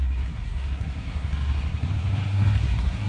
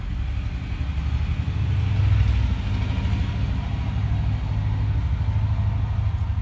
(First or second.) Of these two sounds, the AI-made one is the first